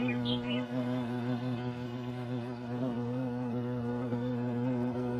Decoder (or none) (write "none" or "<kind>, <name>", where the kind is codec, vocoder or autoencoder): codec, SNAC